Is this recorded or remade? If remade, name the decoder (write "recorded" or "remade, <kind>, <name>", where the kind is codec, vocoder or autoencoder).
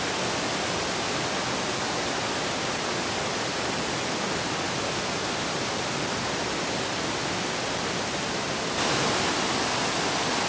recorded